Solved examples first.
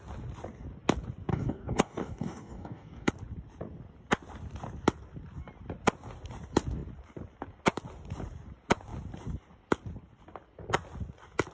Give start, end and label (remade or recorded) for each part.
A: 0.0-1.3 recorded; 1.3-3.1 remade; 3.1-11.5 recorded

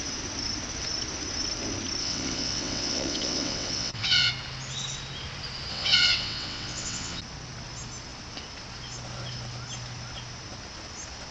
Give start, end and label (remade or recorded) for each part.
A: 0.0-2.0 recorded; 2.0-4.3 remade; 4.3-5.7 recorded; 5.7-7.2 remade; 7.2-11.3 recorded

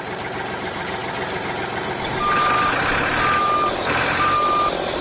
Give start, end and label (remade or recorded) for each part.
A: 0.0-5.0 recorded

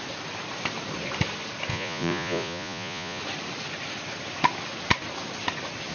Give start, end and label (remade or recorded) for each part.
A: 0.0-1.7 recorded; 1.7-3.2 remade; 3.2-5.9 recorded

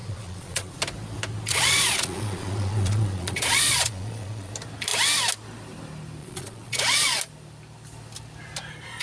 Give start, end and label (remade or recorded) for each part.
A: 0.0-0.8 remade; 0.8-1.5 recorded; 1.5-4.5 remade; 4.5-6.2 recorded; 6.2-7.2 remade; 7.2-9.0 recorded

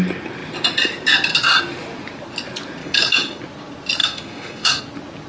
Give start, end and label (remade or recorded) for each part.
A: 0.0-2.8 recorded; 2.8-3.4 remade; 3.4-4.0 recorded; 4.0-4.8 remade; 4.8-5.3 recorded

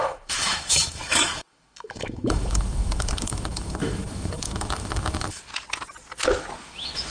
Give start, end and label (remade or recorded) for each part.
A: 0.0-5.5 remade; 5.5-6.6 recorded; 6.6-7.1 remade